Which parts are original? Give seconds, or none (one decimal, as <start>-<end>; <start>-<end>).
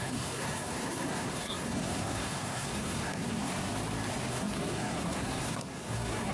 3.5-4.3